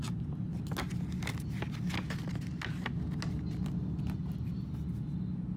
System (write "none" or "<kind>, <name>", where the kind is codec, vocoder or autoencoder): none